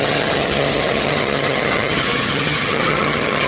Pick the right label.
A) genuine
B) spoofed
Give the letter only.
B